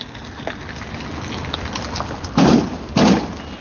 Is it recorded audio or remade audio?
recorded